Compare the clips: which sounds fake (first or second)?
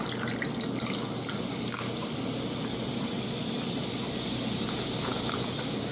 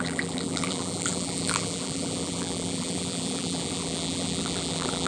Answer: second